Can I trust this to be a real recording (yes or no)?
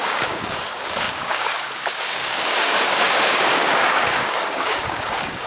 no